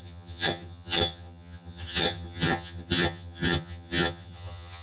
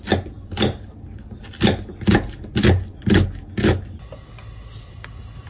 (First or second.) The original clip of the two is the second